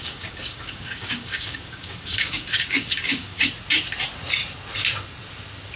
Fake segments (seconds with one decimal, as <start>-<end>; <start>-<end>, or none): 0.0-3.5